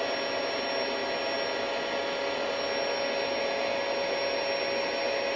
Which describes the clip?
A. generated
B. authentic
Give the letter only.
B